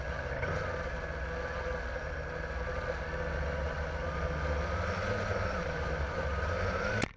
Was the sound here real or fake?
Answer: real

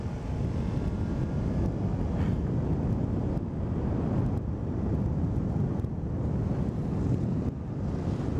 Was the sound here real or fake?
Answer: real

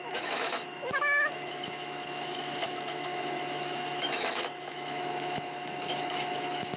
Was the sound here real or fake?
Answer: fake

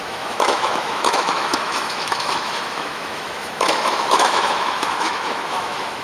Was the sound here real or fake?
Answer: fake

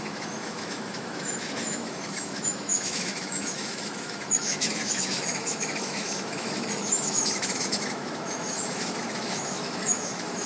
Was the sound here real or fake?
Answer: fake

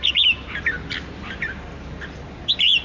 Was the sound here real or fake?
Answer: real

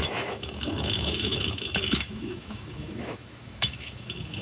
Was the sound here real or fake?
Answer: fake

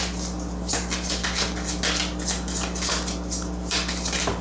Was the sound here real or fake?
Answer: real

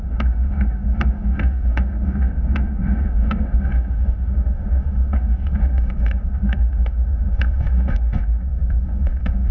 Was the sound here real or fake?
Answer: fake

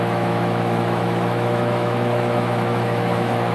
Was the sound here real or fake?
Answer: fake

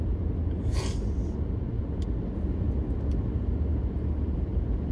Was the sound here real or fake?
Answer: real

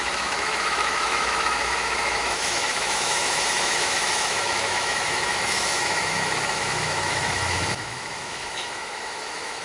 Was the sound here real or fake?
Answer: fake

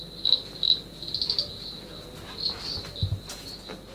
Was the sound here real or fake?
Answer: real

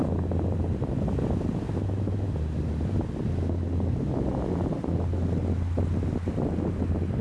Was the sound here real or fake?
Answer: real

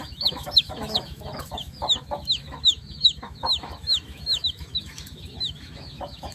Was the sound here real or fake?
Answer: fake